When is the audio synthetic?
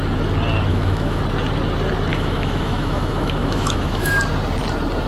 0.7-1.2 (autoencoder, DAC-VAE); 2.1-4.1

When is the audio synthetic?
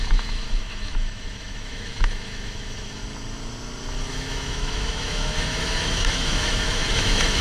0.0-3.0 (autoencoder, DAC-VAE); 4.1-7.4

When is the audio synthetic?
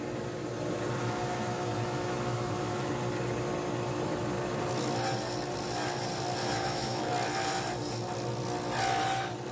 1.0-2.9 (autoencoder, DAC-VAE); 6.4-7.1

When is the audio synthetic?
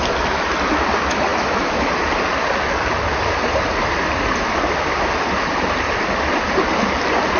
1.3-1.9 (autoencoder, DAC-VAE)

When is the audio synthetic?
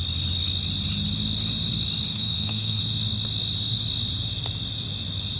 2.1-2.8 (autoencoder, DAC-VAE)